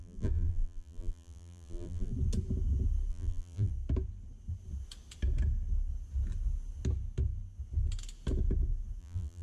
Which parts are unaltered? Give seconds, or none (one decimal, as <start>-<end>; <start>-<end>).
2.1-3.1; 3.7-9.0